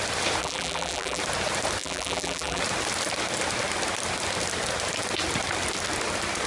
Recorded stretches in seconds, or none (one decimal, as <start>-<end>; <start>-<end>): 0.0-0.4; 1.2-1.8; 2.6-6.5

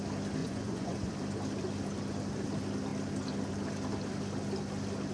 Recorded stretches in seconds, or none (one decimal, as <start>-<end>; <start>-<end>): 0.0-0.4; 1.1-5.1

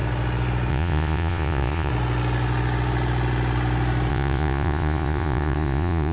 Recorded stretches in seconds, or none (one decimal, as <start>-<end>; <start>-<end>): 0.0-0.7; 1.9-4.1

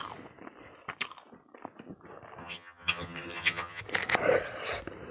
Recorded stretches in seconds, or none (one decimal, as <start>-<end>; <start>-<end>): 0.0-2.4; 3.8-5.1

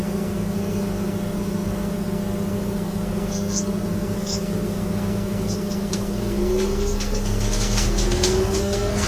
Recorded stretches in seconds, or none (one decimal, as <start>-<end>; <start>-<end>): none

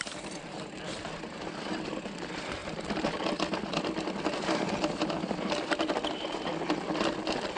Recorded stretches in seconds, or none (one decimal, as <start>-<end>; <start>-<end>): 0.0-7.6